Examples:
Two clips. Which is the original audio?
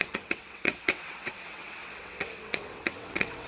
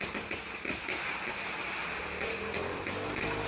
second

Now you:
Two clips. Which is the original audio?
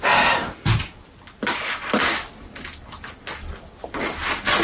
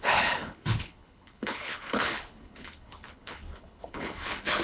first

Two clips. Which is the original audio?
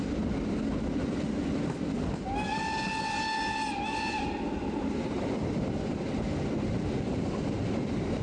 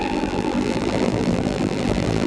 first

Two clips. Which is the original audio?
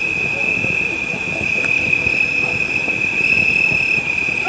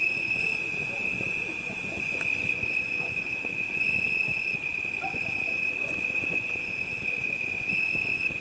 first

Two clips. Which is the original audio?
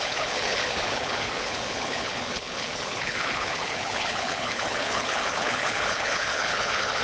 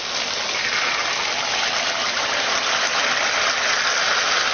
second